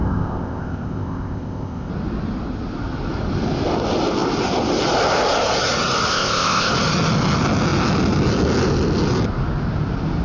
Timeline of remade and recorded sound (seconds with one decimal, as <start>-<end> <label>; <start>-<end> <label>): 0.0-1.9 remade; 1.9-6.1 recorded; 6.1-6.7 remade; 6.7-10.2 recorded